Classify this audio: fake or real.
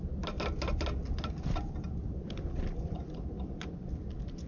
real